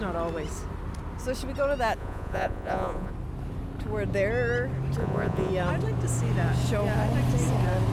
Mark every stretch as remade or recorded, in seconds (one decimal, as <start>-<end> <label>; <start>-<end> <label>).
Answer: 0.0-2.0 recorded; 2.0-3.1 remade; 3.1-5.0 recorded; 5.0-5.5 remade; 5.5-7.9 recorded